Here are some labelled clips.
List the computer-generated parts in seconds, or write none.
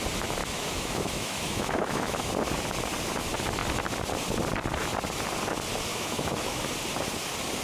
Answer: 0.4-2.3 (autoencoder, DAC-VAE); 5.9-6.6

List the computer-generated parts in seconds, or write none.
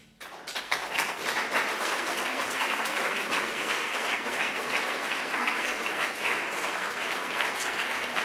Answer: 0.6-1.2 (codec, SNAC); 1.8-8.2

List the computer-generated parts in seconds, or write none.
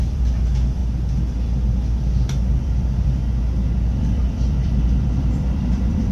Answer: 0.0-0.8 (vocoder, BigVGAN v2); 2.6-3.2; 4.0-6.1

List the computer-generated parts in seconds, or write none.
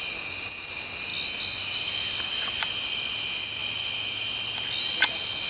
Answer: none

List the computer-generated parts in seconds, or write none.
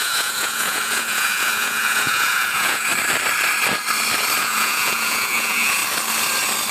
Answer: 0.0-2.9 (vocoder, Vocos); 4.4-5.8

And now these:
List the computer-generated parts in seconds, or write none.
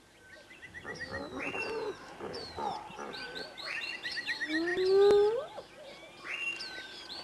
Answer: 3.1-3.9 (vocoder, BigVGAN v2)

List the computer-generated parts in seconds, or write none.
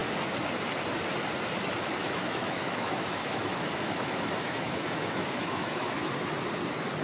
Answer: 2.0-6.2 (autoencoder, DAC-VAE)